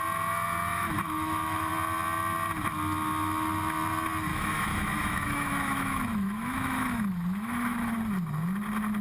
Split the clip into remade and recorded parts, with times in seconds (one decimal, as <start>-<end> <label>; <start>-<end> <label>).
0.0-0.7 recorded; 0.7-1.7 remade; 1.7-4.3 recorded; 4.3-7.9 remade; 7.9-9.0 recorded